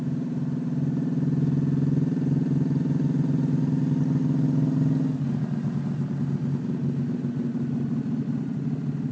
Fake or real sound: real